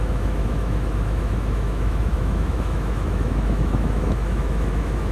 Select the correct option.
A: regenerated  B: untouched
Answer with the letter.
A